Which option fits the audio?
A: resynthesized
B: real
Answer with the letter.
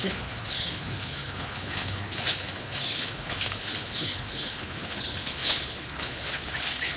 A